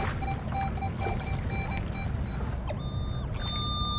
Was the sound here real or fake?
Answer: real